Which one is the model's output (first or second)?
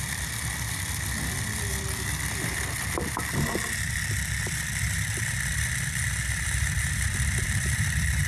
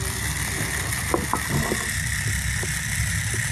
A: first